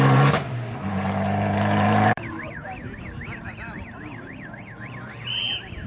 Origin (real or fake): fake